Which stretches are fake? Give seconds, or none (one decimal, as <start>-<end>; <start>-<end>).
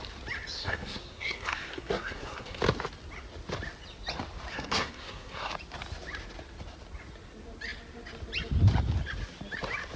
0.6-2.6; 4.5-5.5